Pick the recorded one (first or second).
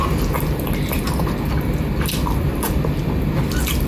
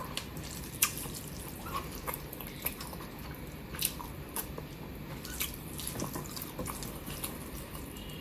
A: first